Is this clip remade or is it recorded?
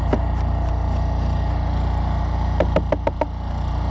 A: recorded